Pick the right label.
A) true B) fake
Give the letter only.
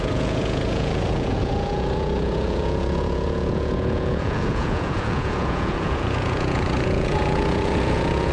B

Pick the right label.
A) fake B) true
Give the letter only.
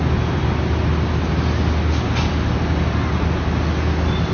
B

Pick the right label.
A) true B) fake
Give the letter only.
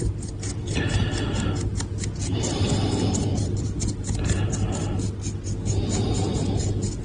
A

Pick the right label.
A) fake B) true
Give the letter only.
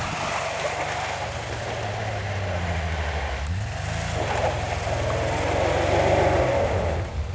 B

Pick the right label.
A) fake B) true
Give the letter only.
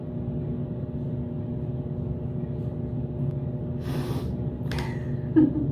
B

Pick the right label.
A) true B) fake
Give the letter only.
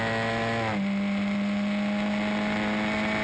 A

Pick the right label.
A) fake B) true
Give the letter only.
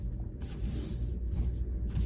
B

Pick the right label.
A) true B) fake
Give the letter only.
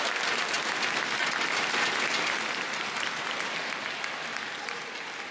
A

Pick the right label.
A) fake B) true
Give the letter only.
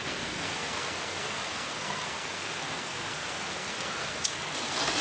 A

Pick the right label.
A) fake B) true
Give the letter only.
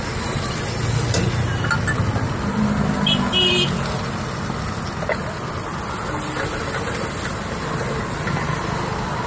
B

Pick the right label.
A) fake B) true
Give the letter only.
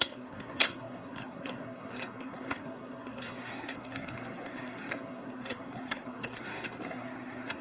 A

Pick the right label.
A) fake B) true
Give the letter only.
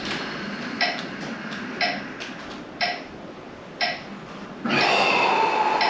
B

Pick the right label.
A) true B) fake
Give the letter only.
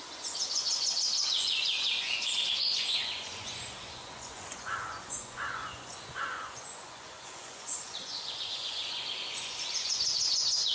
B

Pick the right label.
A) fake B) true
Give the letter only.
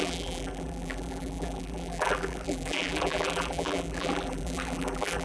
A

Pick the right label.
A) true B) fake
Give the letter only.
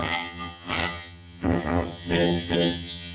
B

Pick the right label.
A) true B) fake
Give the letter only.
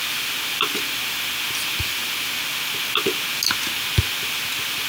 A